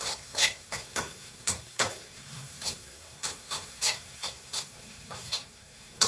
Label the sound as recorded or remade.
remade